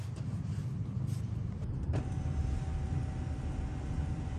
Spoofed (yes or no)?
no